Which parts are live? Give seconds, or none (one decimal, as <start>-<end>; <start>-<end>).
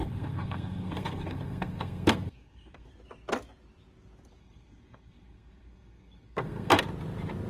2.9-4.4; 6.8-7.5